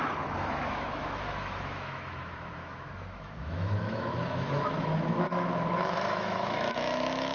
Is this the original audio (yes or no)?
no